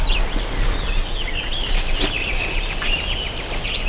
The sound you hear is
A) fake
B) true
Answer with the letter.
B